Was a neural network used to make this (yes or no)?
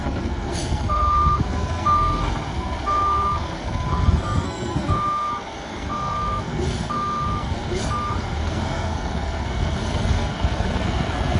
yes